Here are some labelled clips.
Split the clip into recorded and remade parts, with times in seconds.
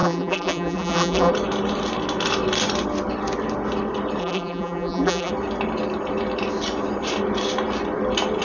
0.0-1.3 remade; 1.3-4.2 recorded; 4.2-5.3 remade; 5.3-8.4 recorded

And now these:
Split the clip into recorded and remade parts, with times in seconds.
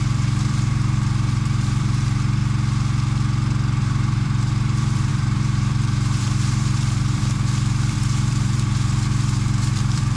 0.0-2.4 remade; 2.4-3.8 recorded; 3.8-10.2 remade